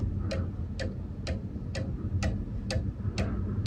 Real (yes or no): yes